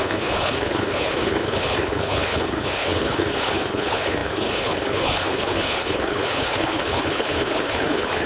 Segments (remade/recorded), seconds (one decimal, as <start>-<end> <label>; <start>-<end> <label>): 0.0-8.3 remade